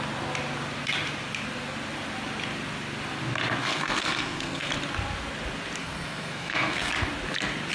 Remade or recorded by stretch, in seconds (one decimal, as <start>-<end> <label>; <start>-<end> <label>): 0.0-3.6 recorded; 3.6-4.7 remade; 4.7-5.8 recorded; 5.8-6.9 remade; 6.9-7.7 recorded